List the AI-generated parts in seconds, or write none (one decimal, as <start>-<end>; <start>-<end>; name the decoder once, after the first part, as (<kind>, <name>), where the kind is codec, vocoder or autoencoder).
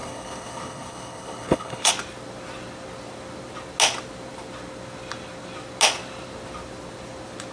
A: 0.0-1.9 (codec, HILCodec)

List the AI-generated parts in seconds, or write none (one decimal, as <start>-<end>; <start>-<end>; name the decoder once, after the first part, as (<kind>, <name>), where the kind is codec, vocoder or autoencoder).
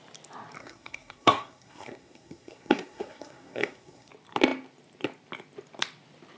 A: 0.6-4.1 (codec, SNAC)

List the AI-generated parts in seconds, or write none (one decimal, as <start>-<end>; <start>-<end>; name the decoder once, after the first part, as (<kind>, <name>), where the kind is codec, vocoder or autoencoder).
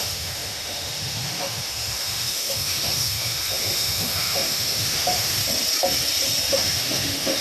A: 0.0-5.4 (autoencoder, DAC-VAE); 6.5-7.4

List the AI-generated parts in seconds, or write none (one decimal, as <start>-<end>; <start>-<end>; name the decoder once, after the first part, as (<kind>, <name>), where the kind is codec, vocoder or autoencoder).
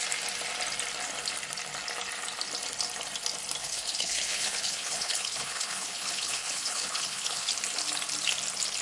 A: 3.6-7.5 (codec, HILCodec)